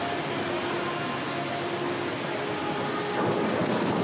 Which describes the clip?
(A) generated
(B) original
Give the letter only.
B